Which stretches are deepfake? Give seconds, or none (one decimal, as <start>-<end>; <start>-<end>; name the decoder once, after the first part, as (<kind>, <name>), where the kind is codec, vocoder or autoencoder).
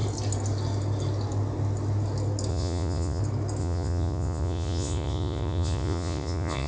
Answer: 2.5-3.2 (vocoder, Vocos); 3.6-6.7